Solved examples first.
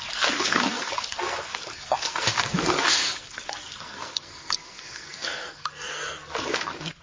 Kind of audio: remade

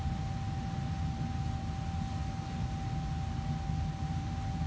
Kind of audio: recorded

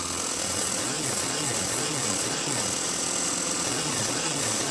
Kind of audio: remade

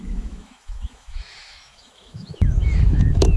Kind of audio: remade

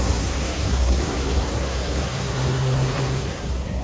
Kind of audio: remade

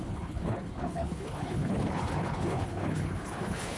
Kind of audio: remade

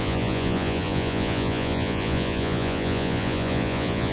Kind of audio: remade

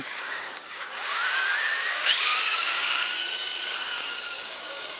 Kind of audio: remade